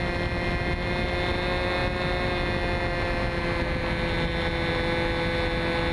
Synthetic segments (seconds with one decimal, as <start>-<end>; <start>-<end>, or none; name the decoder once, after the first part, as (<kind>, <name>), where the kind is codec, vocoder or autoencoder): none